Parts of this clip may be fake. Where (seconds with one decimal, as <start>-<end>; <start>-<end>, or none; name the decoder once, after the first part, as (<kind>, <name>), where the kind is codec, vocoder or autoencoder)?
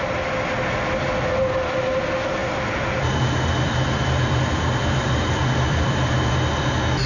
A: 2.4-6.1 (vocoder, BigVGAN v2)